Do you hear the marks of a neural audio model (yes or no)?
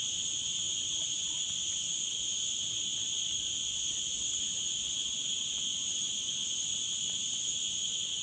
no